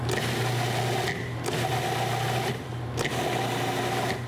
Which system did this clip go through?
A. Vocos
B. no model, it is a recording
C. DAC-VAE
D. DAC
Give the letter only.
B